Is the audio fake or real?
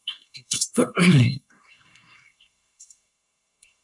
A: fake